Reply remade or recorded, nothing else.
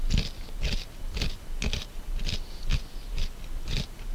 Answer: recorded